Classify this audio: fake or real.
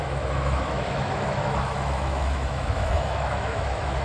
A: fake